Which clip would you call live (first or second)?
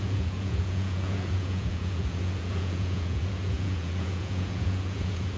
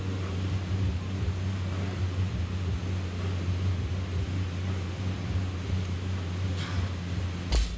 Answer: second